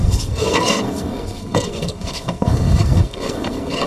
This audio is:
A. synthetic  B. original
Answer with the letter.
A